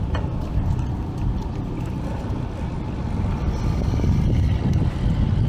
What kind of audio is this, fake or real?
real